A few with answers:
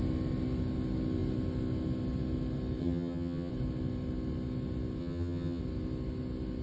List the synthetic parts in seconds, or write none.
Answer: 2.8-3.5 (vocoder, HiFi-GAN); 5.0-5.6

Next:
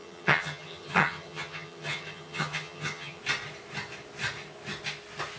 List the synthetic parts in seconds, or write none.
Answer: 0.0-3.2 (vocoder, HiFi-GAN)

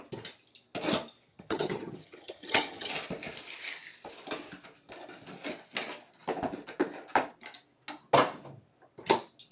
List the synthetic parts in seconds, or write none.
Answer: 1.3-2.9 (vocoder, HiFi-GAN)

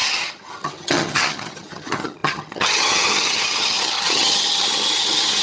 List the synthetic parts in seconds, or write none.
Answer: 0.0-5.4 (vocoder, HiFi-GAN)

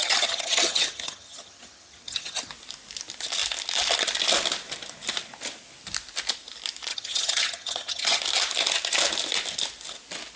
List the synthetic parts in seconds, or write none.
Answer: 0.0-2.5 (vocoder, HiFi-GAN); 6.9-8.2

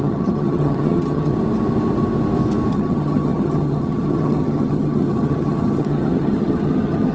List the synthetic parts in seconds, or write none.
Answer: 0.0-1.3 (vocoder, HiFi-GAN); 2.7-7.1